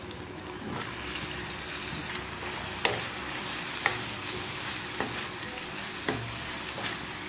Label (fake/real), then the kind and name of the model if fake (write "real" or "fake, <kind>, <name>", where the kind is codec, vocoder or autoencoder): real